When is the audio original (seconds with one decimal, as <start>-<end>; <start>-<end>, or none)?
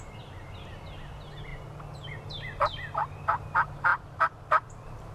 0.0-5.1